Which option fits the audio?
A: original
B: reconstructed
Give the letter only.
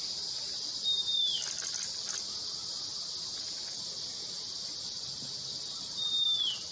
A